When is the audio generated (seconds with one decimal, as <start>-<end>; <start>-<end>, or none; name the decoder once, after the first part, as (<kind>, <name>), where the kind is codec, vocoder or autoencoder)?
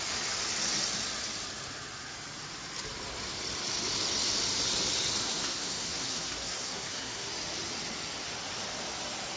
5.2-7.3 (codec, SNAC)